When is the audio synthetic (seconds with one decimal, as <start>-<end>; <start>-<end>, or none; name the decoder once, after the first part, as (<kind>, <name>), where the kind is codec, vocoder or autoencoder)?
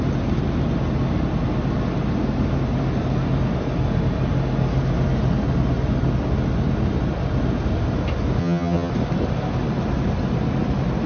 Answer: 8.4-8.9 (vocoder, HiFi-GAN)